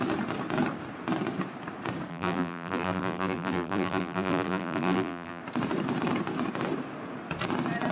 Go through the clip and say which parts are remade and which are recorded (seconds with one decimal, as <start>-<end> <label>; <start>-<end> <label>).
0.0-2.1 recorded; 2.1-5.4 remade; 5.4-7.9 recorded